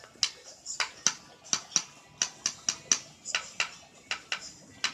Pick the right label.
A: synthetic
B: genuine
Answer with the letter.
B